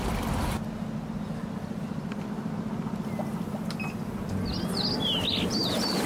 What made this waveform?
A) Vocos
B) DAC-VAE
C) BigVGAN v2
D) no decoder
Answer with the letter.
D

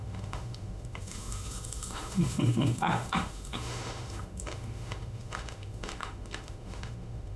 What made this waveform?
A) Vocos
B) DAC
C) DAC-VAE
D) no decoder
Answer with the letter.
C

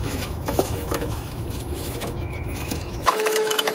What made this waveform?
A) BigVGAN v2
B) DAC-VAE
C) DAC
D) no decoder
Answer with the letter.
B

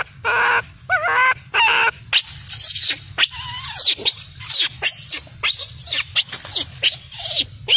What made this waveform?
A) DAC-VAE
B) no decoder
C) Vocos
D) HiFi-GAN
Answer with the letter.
B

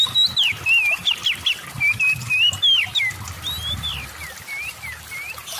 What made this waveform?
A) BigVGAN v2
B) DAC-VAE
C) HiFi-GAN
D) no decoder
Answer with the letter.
D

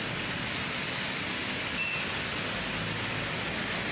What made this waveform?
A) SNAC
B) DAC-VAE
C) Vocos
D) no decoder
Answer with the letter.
D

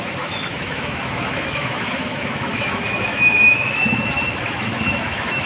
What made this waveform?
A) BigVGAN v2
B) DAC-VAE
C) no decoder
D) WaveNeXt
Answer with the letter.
B